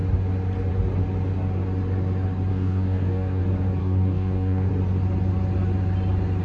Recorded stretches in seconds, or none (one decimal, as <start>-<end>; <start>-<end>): 0.0-2.5; 3.4-3.8; 4.7-6.4